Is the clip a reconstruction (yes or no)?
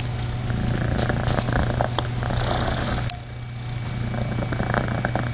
no